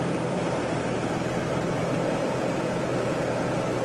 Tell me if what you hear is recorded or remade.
remade